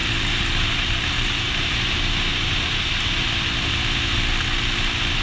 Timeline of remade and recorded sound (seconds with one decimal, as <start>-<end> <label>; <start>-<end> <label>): 0.0-1.9 remade; 1.9-5.2 recorded